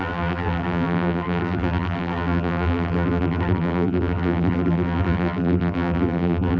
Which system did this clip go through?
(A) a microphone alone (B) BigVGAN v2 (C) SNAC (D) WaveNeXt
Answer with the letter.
B